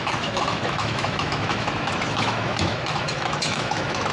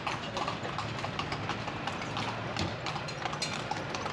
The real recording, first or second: second